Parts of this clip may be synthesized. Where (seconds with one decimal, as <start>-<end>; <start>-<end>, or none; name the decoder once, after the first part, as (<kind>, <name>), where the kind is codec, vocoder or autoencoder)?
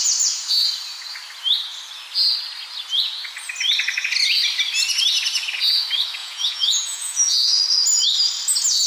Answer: 6.2-7.6 (vocoder, Vocos)